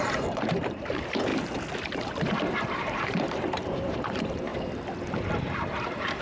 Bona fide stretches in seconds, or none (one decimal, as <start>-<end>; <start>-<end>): 1.3-2.7; 4.5-5.3